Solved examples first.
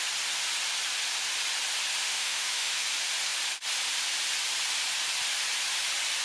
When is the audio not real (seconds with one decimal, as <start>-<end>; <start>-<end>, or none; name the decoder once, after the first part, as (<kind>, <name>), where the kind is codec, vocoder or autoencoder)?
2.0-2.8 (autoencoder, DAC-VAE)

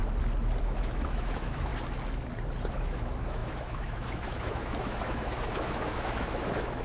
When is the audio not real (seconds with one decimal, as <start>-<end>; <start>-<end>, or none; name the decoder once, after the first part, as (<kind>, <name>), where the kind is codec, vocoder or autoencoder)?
0.6-1.7 (autoencoder, DAC-VAE); 2.7-6.8

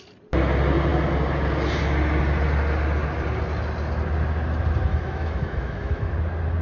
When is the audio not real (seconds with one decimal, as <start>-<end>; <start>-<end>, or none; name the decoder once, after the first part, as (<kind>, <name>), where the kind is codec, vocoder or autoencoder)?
4.9-6.1 (autoencoder, DAC-VAE)

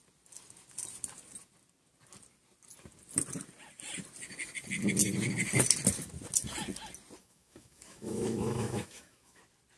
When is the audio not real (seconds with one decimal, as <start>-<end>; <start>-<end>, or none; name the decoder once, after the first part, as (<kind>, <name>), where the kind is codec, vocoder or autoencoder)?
7.2-9.4 (autoencoder, DAC-VAE)

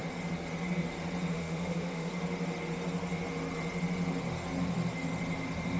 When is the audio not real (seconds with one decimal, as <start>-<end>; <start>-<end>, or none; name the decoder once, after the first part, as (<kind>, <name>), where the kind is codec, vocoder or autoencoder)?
1.3-2.1 (autoencoder, DAC-VAE)